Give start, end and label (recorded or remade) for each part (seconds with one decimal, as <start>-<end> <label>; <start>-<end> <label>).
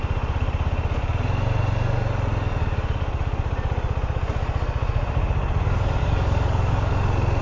0.0-6.0 recorded; 6.0-6.9 remade; 6.9-7.4 recorded